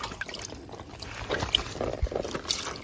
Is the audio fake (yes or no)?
no